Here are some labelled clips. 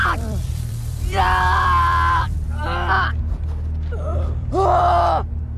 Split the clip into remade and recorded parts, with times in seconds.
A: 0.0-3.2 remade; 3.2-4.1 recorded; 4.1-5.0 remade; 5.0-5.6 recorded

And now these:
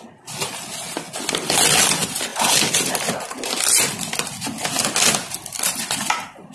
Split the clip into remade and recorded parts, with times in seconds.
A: 0.0-6.5 recorded

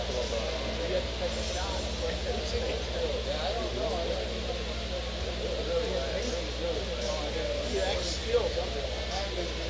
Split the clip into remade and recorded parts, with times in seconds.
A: 0.0-9.7 recorded

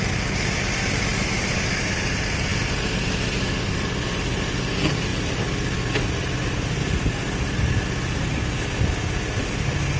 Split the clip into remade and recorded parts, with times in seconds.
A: 0.0-1.1 recorded; 1.1-1.7 remade; 1.7-10.0 recorded

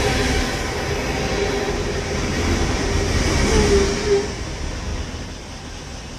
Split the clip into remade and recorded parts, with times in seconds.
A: 0.0-4.9 recorded; 4.9-6.2 remade

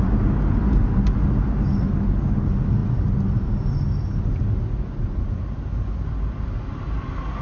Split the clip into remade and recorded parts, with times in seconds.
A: 0.0-7.4 recorded

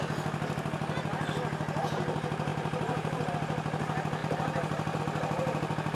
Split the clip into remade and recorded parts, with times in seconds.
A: 0.0-2.5 recorded; 2.5-3.3 remade; 3.3-4.2 recorded; 4.2-5.0 remade; 5.0-5.9 recorded

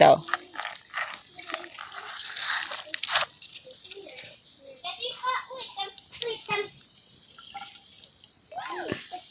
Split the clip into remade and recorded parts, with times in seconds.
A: 0.0-2.4 recorded; 2.4-3.0 remade; 3.0-3.5 recorded; 3.5-7.6 remade; 7.6-9.3 recorded